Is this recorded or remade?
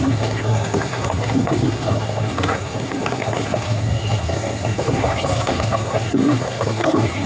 remade